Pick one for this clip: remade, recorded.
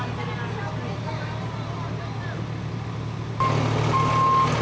recorded